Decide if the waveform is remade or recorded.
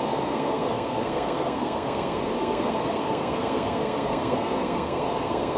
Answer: remade